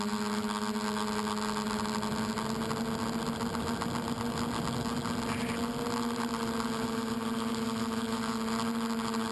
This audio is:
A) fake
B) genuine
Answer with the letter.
B